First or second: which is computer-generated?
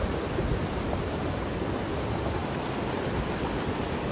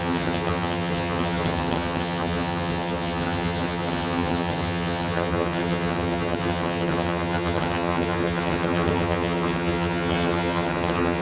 second